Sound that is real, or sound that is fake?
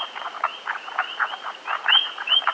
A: fake